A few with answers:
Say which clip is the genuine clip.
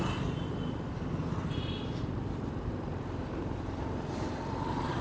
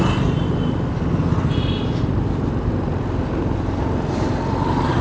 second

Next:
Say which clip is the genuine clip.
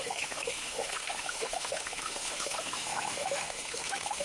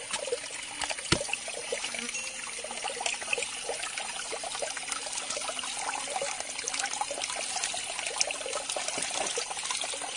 second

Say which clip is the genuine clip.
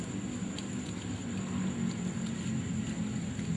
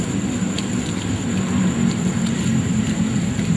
first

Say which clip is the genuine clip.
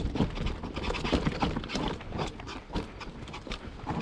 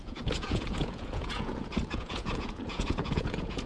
first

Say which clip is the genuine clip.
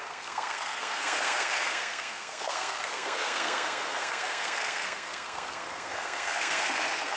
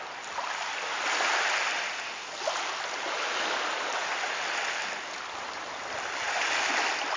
second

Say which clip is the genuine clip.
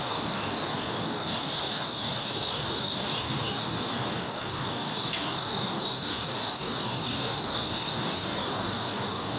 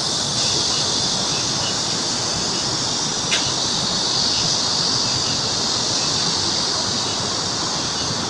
second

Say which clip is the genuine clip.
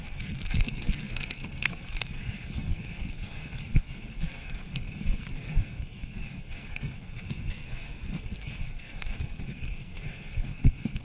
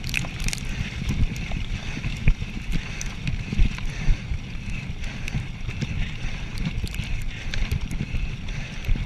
second